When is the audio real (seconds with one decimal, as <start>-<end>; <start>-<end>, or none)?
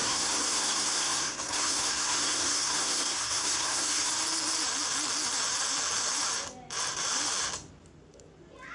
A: 4.1-8.7